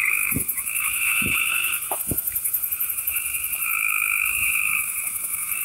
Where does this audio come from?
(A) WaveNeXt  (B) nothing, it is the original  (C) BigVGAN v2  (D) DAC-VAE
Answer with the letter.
D